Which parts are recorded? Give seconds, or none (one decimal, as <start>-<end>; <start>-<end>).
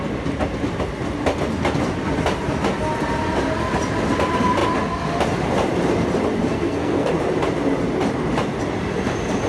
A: 0.0-6.4; 7.1-9.5